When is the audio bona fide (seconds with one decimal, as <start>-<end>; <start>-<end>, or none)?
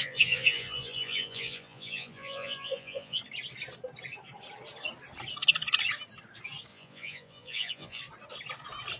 3.2-6.7; 8.0-9.0